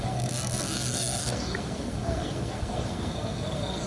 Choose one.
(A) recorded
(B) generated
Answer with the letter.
B